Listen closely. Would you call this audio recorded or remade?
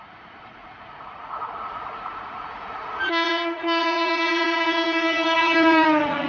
remade